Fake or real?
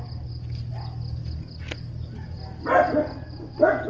real